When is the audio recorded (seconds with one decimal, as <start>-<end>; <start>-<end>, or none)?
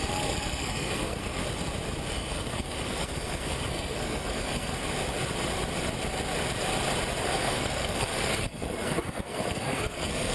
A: 1.4-2.1; 4.8-7.2